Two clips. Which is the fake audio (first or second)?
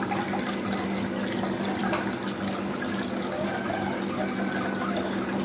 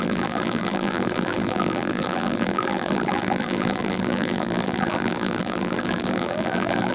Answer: second